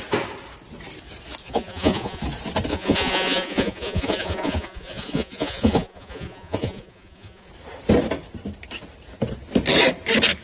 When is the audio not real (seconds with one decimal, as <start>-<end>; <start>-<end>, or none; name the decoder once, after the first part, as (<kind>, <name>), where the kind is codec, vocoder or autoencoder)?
1.4-2.2 (vocoder, Vocos); 2.7-7.5